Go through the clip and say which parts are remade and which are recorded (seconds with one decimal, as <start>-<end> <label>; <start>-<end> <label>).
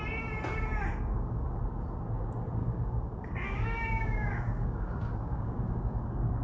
0.0-0.9 recorded; 0.9-1.6 remade; 1.6-2.6 recorded; 2.6-6.4 remade